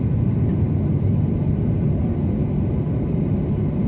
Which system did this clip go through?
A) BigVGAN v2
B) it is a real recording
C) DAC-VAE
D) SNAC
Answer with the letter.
B